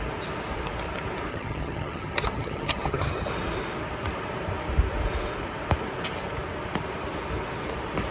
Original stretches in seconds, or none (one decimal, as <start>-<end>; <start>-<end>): 0.0-1.3; 3.3-8.1